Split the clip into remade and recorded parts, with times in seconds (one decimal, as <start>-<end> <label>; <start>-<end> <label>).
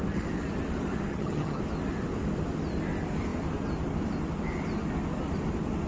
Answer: 0.0-1.1 recorded; 1.1-1.6 remade; 1.6-5.9 recorded